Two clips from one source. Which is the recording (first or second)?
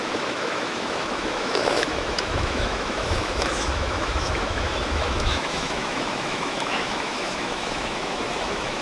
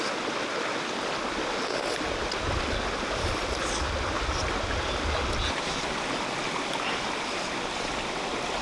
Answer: second